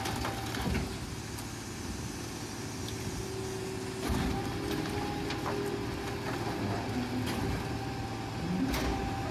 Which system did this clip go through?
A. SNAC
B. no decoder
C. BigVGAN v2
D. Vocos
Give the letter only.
B